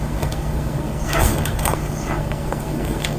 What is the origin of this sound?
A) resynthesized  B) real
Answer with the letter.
A